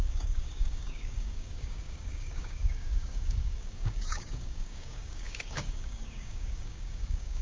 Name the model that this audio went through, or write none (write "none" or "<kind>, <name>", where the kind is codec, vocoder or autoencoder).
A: codec, DAC